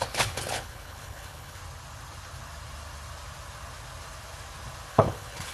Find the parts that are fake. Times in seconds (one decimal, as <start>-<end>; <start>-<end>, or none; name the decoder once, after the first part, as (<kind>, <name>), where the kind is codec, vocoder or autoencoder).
0.0-1.6 (codec, HILCodec); 4.9-5.5